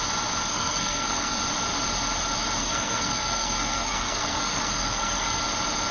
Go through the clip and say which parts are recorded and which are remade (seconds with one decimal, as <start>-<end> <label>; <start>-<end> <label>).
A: 0.0-0.5 recorded; 0.5-1.4 remade; 1.4-2.6 recorded; 2.6-5.4 remade; 5.4-5.9 recorded